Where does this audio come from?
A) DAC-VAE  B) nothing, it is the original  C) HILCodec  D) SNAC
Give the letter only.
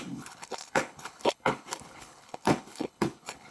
C